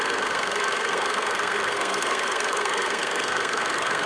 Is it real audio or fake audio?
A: fake